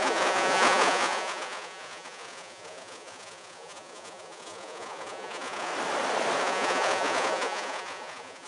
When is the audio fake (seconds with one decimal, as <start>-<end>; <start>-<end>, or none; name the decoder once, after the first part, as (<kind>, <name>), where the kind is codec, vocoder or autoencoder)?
0.0-5.7 (vocoder, Vocos); 6.4-8.5